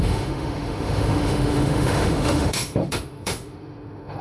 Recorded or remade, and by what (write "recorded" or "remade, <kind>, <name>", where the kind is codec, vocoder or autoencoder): remade, autoencoder, DAC-VAE